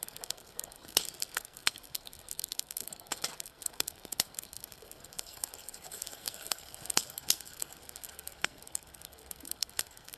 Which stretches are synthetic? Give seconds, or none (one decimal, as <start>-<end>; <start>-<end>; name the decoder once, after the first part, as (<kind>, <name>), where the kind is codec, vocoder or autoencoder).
0.0-10.2 (codec, SNAC)